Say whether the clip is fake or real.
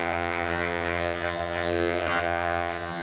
fake